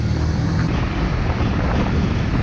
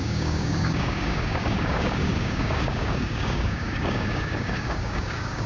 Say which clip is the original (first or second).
first